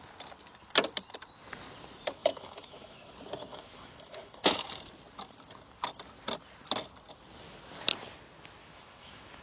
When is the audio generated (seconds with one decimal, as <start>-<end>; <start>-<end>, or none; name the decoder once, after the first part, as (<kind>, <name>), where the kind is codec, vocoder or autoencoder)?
2.2-3.1 (autoencoder, DAC-VAE); 3.5-4.7; 8.6-9.4